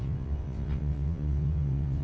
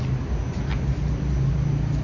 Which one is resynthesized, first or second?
first